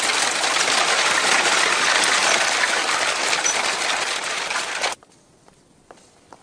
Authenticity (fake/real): real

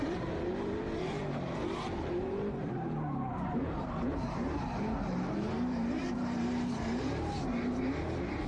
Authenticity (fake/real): fake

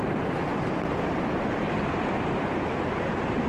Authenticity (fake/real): fake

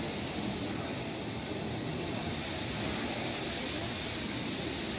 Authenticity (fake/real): real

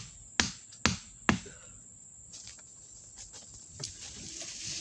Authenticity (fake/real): real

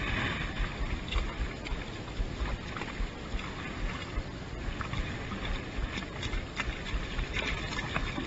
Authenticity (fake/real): real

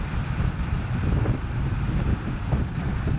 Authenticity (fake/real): fake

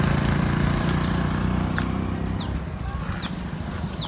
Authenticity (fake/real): real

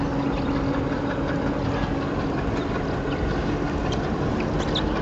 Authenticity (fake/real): real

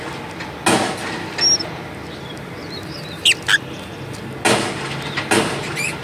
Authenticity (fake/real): real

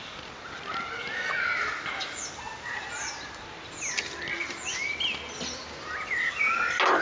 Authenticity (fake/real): real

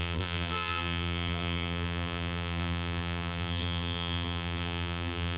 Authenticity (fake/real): fake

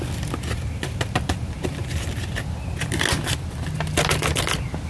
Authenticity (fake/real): real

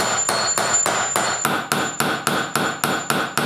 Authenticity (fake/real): real